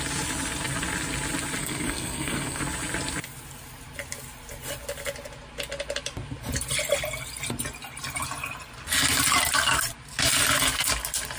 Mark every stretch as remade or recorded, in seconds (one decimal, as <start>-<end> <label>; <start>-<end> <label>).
0.0-1.6 recorded; 1.6-2.6 remade; 2.6-11.4 recorded